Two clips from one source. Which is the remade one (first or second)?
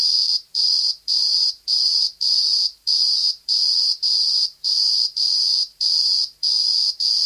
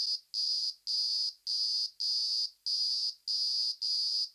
first